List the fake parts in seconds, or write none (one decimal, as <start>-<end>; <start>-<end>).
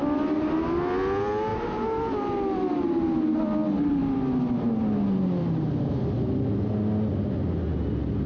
none